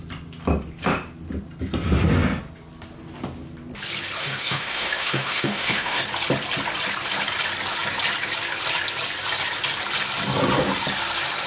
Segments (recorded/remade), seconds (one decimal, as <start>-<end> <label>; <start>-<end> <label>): 0.0-4.2 recorded; 4.2-6.0 remade; 6.0-11.5 recorded